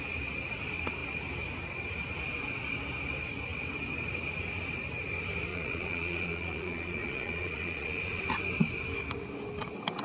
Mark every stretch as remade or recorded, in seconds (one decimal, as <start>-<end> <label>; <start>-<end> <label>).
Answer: 0.0-5.5 recorded; 5.5-8.2 remade; 8.2-10.0 recorded